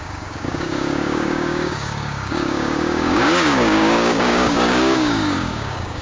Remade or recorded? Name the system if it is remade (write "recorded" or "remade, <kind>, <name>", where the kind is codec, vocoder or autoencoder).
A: remade, codec, DAC